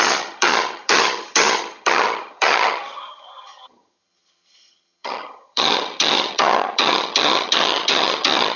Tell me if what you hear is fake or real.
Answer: fake